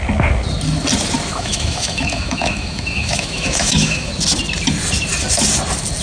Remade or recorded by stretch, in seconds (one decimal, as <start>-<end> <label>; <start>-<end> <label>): 0.0-1.3 recorded; 1.3-4.1 remade; 4.1-6.0 recorded